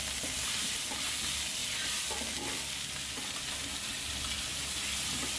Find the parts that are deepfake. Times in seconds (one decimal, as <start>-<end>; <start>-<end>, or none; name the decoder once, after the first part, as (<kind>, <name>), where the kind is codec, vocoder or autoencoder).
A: none